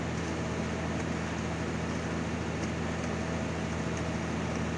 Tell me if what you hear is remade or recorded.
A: recorded